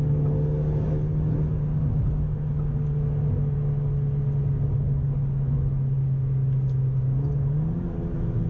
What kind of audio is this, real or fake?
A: real